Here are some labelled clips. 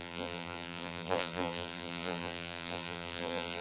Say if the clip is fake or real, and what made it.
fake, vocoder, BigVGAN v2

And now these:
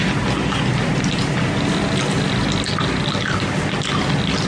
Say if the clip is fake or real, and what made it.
real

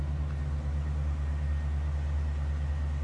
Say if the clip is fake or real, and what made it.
real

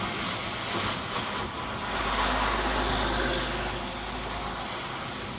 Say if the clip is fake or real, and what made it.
real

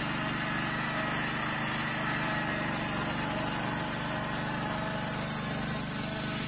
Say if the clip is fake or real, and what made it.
real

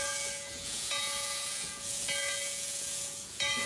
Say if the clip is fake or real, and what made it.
fake, vocoder, Vocos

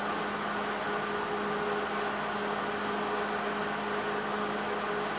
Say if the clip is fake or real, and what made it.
real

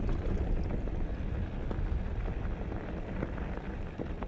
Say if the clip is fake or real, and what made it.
real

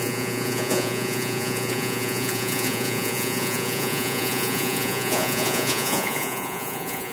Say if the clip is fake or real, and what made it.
fake, vocoder, Vocos